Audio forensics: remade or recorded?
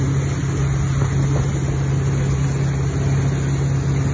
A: recorded